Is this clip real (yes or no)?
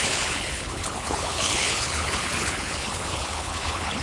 no